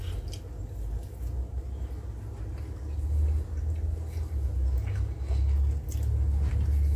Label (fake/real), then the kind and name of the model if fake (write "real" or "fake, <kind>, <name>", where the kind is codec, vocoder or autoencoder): real